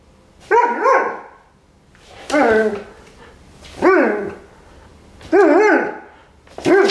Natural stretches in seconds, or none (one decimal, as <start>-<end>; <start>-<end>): 0.0-6.9